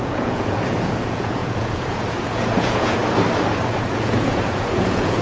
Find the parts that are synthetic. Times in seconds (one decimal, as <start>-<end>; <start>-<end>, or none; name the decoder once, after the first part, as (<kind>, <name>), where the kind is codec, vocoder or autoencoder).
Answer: 0.0-3.0 (vocoder, Vocos); 3.7-5.2